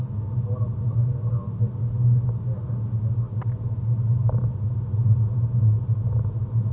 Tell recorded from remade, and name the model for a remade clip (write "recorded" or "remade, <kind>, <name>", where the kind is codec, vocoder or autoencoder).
recorded